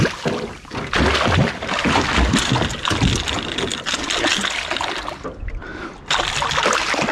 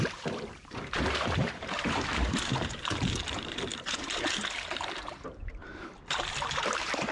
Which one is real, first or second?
first